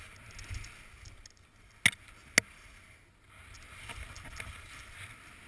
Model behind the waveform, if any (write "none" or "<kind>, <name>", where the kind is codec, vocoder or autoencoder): none